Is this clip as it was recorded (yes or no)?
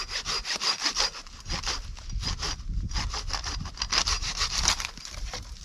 yes